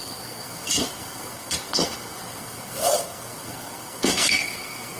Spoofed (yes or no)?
yes